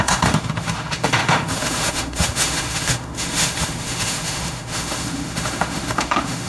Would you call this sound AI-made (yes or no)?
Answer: yes